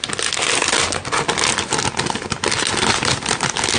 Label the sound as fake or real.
real